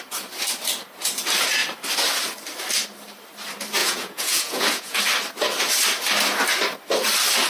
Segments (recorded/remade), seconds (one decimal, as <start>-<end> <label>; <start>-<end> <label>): 0.0-3.8 recorded; 3.8-5.0 remade; 5.0-7.5 recorded